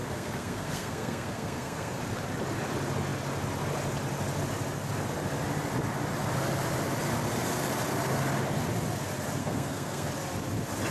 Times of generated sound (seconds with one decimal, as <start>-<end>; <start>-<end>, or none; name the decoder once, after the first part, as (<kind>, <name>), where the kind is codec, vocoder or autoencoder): 0.0-2.0 (codec, SNAC); 9.4-10.1